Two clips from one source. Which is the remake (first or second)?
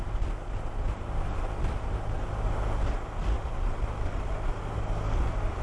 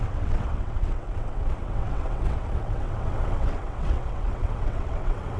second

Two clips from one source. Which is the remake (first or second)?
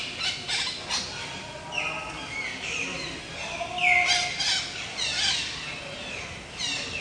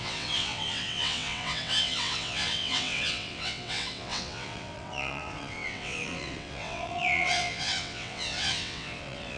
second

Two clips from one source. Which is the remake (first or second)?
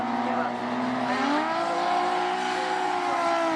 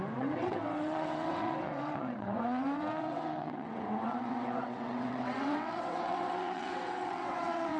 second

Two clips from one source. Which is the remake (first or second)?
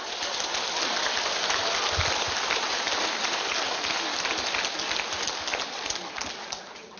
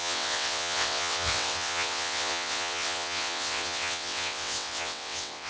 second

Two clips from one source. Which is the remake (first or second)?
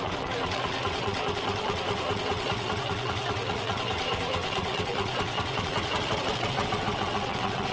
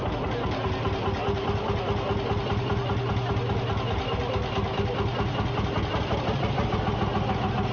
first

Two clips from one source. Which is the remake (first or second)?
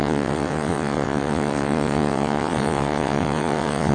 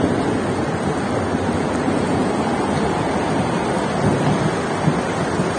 first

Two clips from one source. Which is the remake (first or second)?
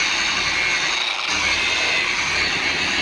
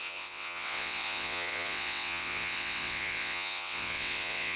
second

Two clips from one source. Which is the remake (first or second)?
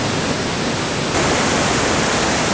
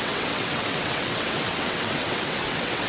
second